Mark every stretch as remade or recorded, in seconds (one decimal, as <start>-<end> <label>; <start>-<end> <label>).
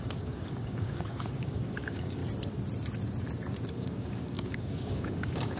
0.0-2.2 remade; 2.2-3.7 recorded; 3.7-5.6 remade